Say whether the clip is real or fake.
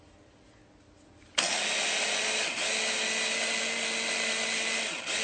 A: real